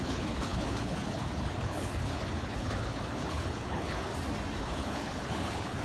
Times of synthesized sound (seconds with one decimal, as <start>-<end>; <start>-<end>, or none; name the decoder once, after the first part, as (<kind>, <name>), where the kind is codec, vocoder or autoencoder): 0.0-4.1 (codec, HILCodec); 4.6-5.8